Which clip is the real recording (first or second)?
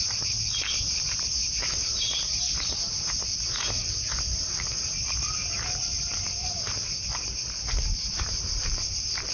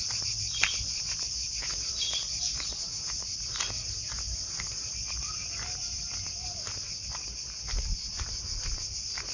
second